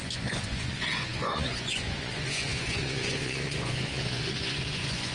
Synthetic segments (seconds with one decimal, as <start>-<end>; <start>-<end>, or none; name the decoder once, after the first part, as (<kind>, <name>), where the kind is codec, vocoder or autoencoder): 0.0-5.1 (vocoder, Vocos)